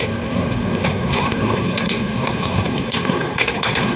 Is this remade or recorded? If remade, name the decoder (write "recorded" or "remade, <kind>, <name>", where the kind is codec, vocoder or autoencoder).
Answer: remade, codec, SNAC